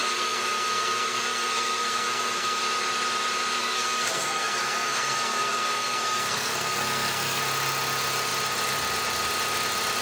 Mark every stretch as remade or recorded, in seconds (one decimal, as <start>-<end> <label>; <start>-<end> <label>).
0.0-2.6 remade; 2.6-3.6 recorded; 3.6-7.4 remade; 7.4-10.0 recorded